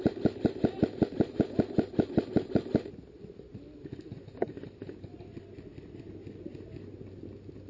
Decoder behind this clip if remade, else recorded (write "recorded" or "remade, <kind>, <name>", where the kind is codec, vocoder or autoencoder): recorded